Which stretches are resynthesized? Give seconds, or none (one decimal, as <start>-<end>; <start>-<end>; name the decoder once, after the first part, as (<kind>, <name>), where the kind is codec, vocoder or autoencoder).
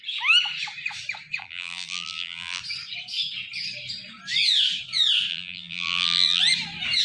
1.4-2.6 (vocoder, BigVGAN v2); 5.3-6.4